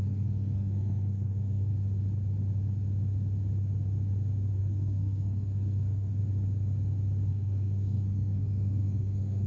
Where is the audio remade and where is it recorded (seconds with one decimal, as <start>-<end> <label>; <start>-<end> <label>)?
0.0-1.7 remade; 1.7-4.6 recorded; 4.6-6.2 remade; 6.2-7.3 recorded; 7.3-9.5 remade